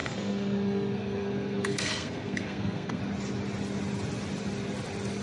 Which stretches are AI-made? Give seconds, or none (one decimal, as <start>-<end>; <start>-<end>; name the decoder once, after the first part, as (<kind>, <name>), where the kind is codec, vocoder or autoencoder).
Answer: 0.0-3.0 (codec, SNAC)